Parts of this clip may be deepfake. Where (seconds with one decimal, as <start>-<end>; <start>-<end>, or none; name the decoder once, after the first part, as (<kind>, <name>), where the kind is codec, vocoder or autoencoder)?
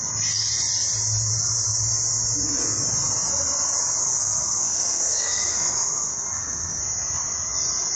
4.0-6.8 (codec, SNAC)